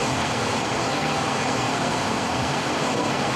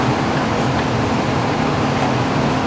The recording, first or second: second